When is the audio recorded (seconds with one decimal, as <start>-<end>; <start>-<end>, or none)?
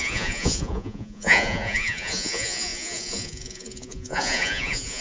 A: none